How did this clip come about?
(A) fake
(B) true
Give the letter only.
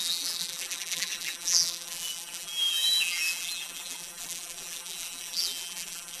A